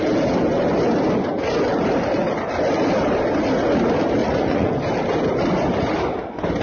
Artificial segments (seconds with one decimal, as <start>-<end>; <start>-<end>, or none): 4.2-4.7